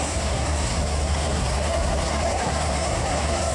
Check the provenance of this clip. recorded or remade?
remade